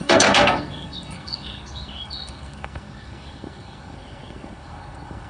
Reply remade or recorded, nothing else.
remade